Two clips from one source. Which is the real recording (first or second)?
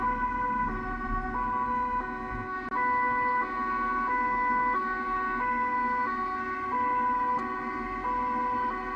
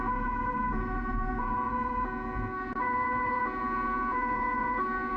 first